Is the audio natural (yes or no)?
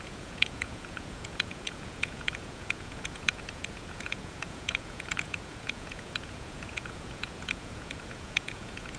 no